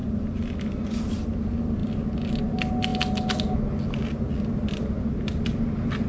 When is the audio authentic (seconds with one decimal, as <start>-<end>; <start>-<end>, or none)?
0.0-6.1